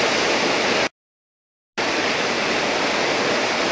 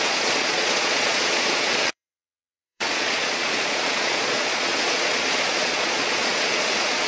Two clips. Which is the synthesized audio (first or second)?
second